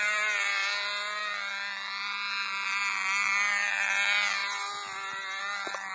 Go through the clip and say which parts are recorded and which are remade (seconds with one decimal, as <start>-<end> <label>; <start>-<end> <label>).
0.0-5.9 recorded